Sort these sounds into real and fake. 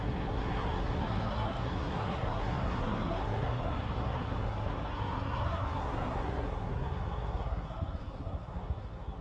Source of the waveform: fake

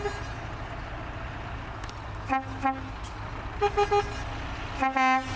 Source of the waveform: real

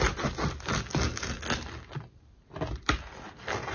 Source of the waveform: real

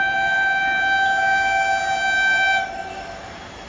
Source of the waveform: real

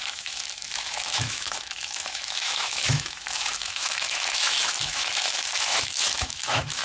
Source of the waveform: fake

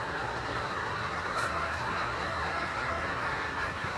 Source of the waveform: fake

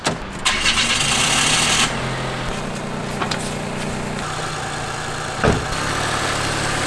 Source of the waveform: real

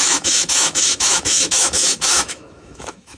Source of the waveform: fake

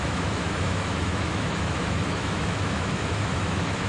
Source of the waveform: fake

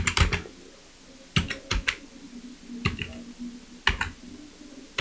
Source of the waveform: real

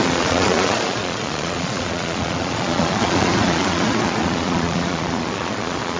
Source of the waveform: fake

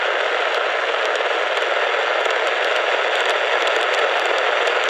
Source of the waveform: real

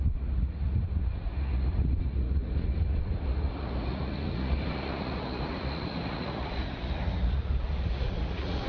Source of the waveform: fake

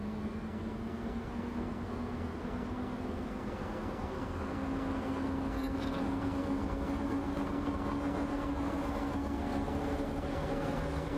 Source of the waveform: fake